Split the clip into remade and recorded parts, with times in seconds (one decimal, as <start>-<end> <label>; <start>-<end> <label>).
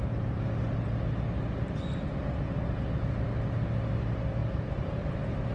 0.0-4.4 recorded; 4.4-5.1 remade; 5.1-5.5 recorded